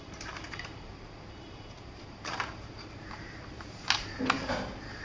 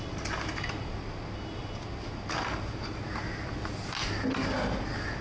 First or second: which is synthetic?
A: first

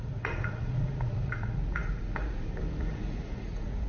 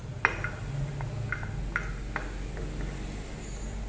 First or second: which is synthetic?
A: first